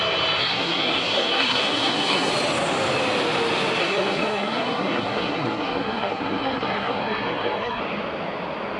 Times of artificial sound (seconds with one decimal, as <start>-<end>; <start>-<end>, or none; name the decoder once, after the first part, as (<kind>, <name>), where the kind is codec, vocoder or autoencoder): 0.4-2.3 (codec, SNAC); 3.8-7.8